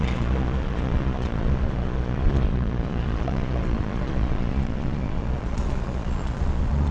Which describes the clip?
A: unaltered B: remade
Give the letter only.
B